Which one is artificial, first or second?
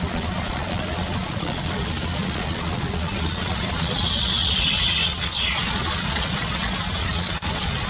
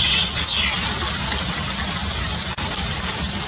first